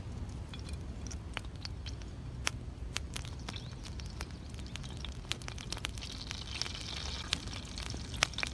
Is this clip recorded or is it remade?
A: recorded